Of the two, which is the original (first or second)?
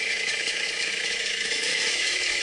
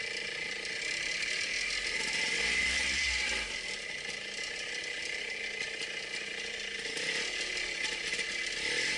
second